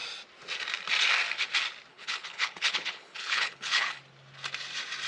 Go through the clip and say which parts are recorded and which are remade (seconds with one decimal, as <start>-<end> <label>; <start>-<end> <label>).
0.0-1.9 recorded; 1.9-4.0 remade; 4.0-5.1 recorded